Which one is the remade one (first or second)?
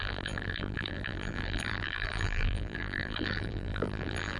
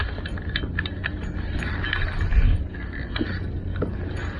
first